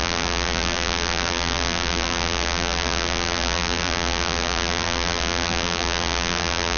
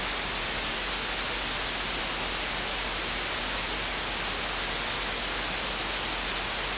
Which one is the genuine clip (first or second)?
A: second